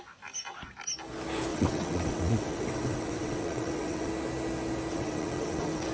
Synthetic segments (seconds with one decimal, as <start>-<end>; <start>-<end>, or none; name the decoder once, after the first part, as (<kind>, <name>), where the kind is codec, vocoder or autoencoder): 1.5-4.1 (vocoder, WaveNeXt); 4.9-5.9